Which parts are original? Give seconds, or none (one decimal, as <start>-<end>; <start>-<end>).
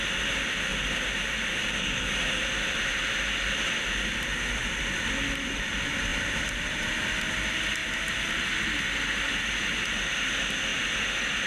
0.0-0.7; 3.2-6.1; 7.3-7.8; 8.6-11.5